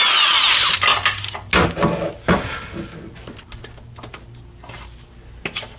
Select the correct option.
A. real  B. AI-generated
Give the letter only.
A